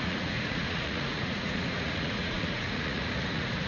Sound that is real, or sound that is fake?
fake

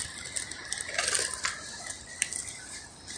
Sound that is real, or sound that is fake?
real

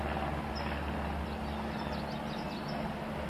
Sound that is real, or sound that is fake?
real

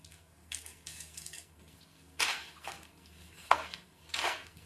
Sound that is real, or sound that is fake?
fake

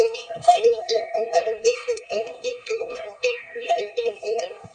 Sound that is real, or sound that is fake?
fake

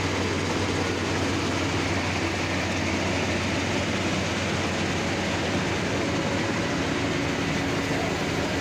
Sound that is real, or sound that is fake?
real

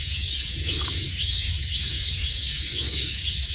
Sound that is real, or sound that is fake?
fake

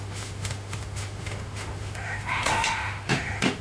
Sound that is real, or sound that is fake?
fake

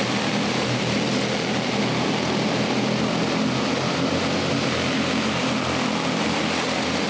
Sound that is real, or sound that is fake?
real